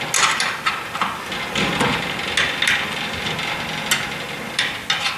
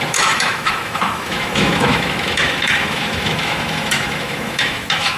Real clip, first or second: first